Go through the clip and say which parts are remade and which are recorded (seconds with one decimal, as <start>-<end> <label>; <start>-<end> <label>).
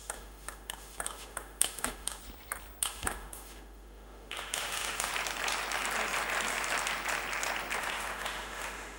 0.0-2.2 remade; 2.2-2.8 recorded; 2.8-5.1 remade; 5.1-7.8 recorded; 7.8-9.0 remade